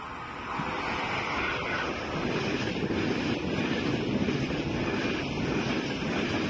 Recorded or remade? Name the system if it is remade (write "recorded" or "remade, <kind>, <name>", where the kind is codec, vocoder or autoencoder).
recorded